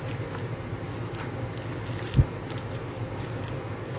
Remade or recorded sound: recorded